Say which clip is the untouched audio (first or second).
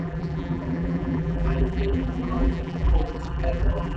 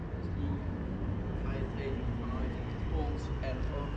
second